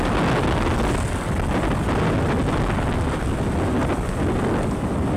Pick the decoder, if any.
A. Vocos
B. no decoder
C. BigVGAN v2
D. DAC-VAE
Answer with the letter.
B